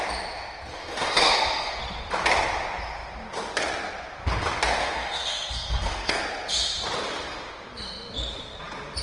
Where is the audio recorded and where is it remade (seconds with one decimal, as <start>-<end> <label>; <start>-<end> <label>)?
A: 0.0-0.7 recorded; 0.7-1.8 remade; 1.8-4.8 recorded; 4.8-6.2 remade; 6.2-9.0 recorded